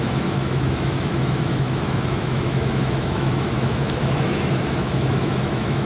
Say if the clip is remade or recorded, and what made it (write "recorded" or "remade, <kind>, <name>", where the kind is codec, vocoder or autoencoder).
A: remade, autoencoder, DAC-VAE